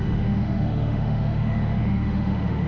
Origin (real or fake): fake